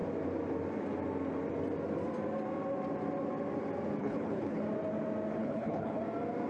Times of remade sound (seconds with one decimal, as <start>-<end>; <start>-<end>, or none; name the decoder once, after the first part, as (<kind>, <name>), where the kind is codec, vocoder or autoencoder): 4.0-4.6 (codec, HILCodec); 5.4-6.0